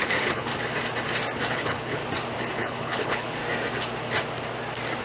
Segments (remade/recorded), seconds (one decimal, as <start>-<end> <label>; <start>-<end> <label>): 0.0-0.5 remade; 0.5-1.5 recorded; 1.5-2.0 remade; 2.0-2.5 recorded; 2.5-3.4 remade; 3.4-5.0 recorded